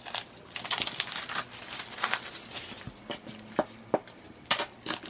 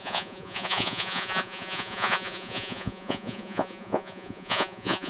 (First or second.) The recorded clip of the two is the first